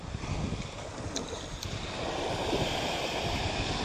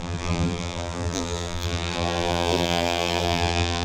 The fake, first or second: second